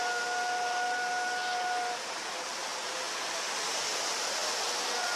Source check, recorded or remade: recorded